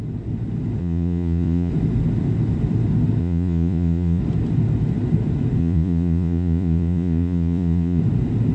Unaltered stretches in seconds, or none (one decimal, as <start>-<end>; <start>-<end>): 0.0-0.8; 1.7-3.2; 4.2-5.6; 8.0-8.5